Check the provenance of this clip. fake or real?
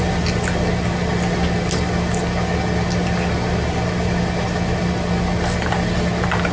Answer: real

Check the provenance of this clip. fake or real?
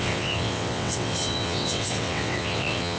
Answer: fake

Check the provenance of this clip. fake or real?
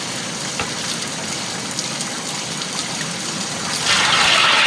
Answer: real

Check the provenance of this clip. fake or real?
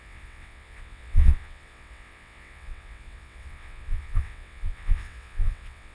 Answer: fake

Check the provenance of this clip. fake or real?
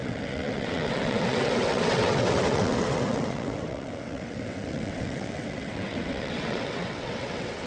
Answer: fake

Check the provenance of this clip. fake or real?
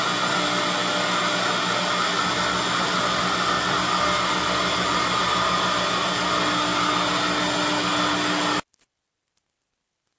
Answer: real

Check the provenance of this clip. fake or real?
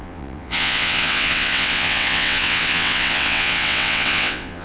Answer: fake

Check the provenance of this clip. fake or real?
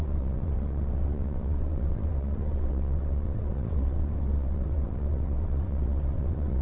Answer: fake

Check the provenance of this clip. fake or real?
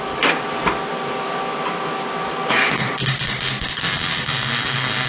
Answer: real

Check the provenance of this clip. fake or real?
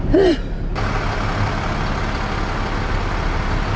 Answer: real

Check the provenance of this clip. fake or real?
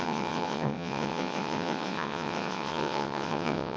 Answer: fake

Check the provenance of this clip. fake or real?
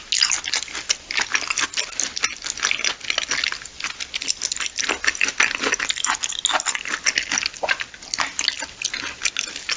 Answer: real